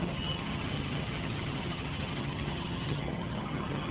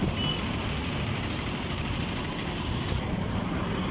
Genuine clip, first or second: second